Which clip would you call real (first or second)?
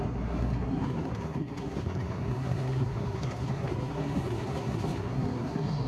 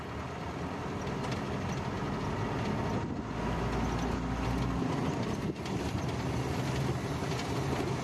second